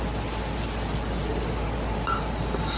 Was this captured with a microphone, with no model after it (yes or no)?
yes